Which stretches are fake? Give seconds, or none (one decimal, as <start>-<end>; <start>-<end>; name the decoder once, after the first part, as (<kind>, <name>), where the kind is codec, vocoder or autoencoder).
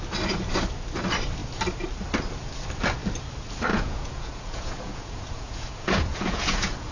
3.7-6.9 (vocoder, Vocos)